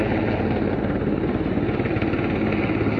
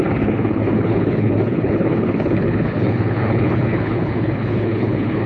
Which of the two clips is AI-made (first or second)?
second